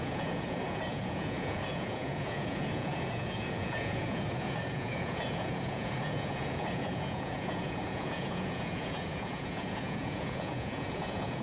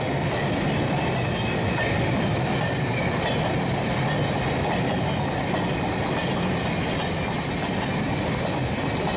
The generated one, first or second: first